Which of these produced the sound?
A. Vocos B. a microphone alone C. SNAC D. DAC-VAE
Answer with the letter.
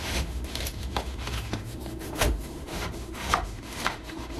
D